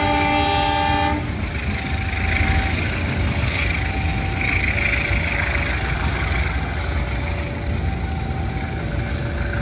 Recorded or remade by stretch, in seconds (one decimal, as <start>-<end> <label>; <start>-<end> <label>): 0.0-9.6 recorded